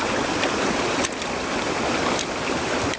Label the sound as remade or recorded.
recorded